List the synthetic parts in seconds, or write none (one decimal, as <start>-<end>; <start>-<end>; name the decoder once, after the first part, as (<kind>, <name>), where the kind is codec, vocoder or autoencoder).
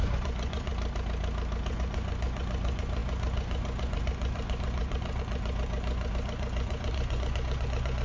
0.0-0.7 (vocoder, Vocos); 1.7-8.0